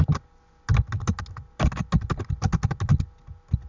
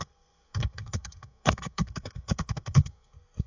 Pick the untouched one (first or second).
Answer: first